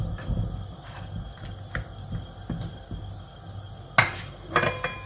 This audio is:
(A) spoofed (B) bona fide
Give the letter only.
B